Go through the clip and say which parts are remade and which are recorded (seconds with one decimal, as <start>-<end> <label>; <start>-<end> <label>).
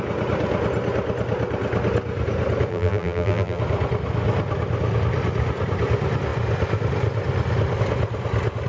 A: 0.0-2.7 recorded; 2.7-3.6 remade; 3.6-8.7 recorded